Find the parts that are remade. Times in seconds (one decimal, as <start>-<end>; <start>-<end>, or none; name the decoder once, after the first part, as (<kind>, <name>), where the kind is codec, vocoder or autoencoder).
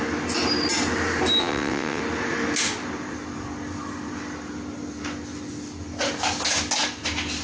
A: 1.4-2.0 (vocoder, WaveNeXt)